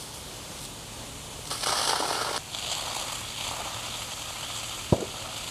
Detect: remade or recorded recorded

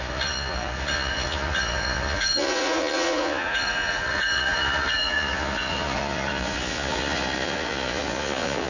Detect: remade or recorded remade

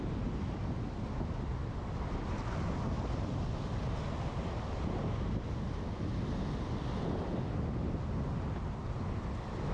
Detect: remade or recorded recorded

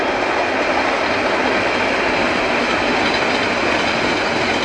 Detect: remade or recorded recorded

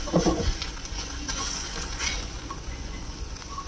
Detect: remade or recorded remade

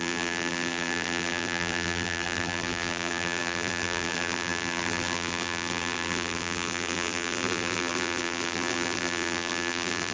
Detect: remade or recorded remade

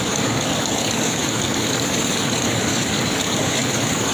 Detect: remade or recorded remade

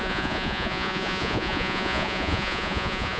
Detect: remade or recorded remade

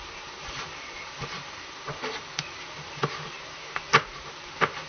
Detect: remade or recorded remade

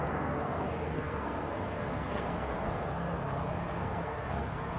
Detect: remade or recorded remade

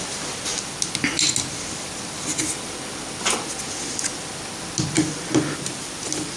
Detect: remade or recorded recorded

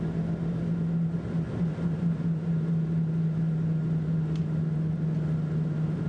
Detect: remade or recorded recorded